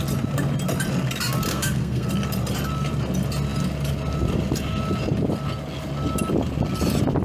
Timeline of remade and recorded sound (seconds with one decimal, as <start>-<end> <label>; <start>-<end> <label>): 0.0-1.5 recorded; 1.5-2.1 remade; 2.1-7.2 recorded